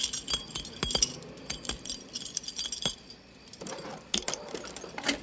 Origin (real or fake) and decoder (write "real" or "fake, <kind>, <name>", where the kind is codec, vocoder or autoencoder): real